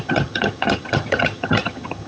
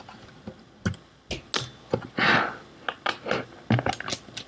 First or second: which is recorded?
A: second